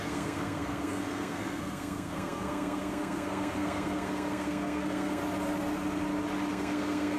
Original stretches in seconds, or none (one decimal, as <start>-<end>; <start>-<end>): 5.2-6.5